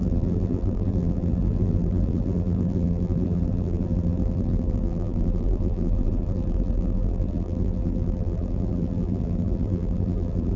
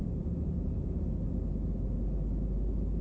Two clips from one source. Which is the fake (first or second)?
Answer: first